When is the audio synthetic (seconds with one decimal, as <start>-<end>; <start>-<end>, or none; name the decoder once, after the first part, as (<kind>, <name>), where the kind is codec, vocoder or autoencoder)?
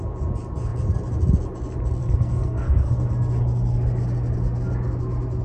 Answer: 2.0-3.1 (codec, SNAC)